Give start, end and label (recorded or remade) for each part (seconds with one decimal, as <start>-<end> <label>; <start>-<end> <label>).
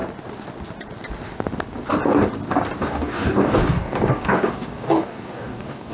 0.0-2.8 recorded; 2.8-5.9 remade